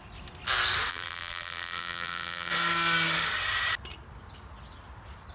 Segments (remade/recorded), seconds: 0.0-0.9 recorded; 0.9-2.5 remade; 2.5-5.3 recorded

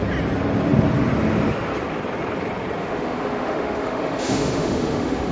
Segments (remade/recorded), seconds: 0.0-2.8 recorded; 2.8-5.3 remade

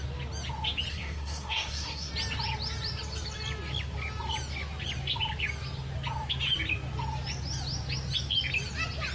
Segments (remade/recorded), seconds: 0.0-0.9 recorded; 0.9-2.1 remade; 2.1-9.1 recorded

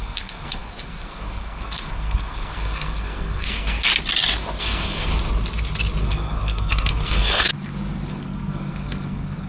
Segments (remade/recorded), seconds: 0.0-3.9 remade; 3.9-4.6 recorded; 4.6-5.1 remade; 5.1-6.0 recorded; 6.0-7.5 remade; 7.5-8.1 recorded; 8.1-9.5 remade